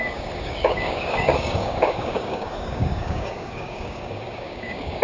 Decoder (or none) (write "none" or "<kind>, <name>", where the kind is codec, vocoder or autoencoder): codec, DAC